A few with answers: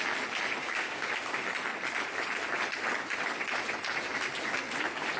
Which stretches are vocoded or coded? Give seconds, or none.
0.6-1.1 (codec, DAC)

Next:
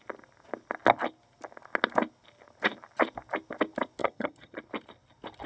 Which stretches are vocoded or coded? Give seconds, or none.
4.0-4.6 (vocoder, HiFi-GAN)

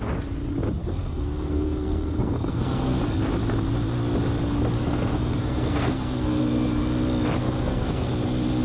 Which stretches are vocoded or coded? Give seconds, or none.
0.8-3.0 (codec, SNAC); 4.8-6.4; 7.4-8.1

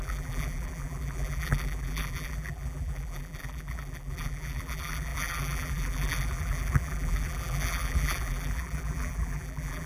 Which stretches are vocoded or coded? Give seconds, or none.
0.0-9.9 (vocoder, BigVGAN v2)

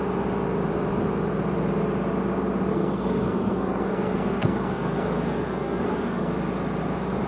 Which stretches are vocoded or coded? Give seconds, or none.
2.7-6.3 (codec, SNAC)

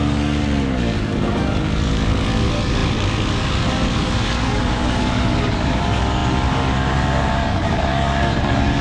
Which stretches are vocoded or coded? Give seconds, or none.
0.0-8.8 (codec, DAC)

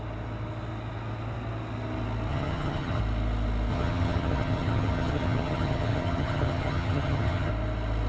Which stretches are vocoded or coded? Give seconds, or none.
2.3-3.0 (vocoder, HiFi-GAN); 3.7-7.5

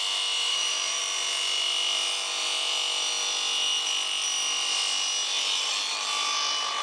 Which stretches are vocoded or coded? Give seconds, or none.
0.5-1.0 (autoencoder, DAC-VAE)